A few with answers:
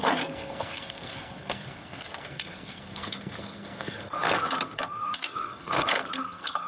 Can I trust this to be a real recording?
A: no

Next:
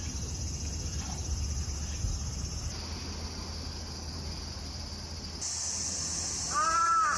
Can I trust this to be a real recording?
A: yes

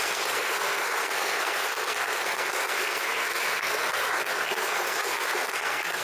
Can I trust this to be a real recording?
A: no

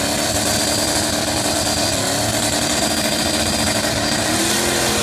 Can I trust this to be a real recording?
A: yes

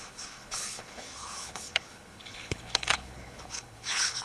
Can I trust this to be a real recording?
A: no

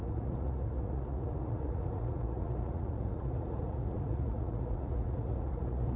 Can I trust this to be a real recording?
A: no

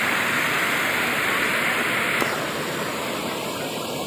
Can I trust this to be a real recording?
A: yes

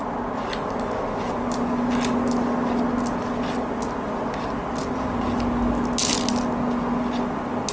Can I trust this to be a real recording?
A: yes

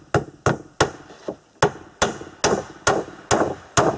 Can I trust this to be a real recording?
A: yes